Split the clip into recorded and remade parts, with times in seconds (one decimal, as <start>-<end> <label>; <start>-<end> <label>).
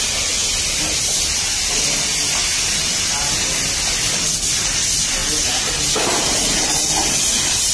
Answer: 0.0-7.7 recorded